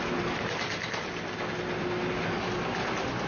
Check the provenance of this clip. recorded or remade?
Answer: recorded